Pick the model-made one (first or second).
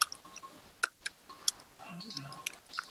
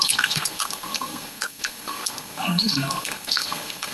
second